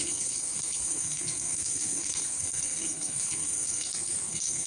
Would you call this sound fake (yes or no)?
yes